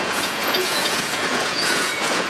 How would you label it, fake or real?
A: fake